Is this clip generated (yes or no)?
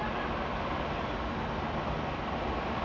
no